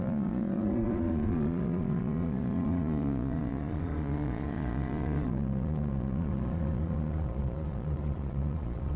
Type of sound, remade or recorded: remade